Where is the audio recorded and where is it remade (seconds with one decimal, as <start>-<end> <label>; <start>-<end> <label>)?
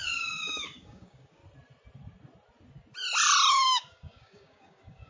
0.0-1.4 remade; 1.4-3.5 recorded; 3.5-5.1 remade